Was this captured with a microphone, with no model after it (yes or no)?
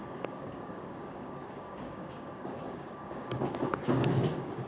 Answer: no